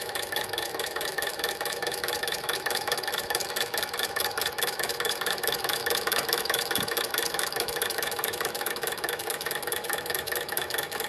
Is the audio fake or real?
fake